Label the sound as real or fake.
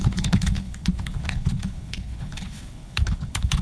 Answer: fake